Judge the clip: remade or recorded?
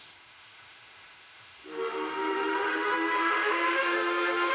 remade